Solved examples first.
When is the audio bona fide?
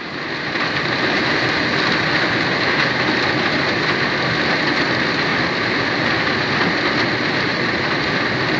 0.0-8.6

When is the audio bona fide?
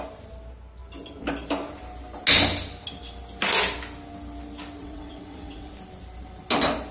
0.0-4.8; 5.7-6.9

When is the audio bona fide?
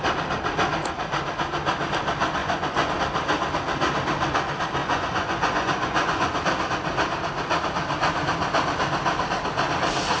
0.0-2.4; 2.9-4.8; 6.4-10.2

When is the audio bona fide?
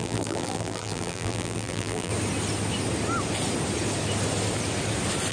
2.1-5.3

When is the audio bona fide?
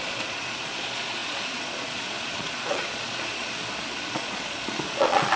3.4-4.0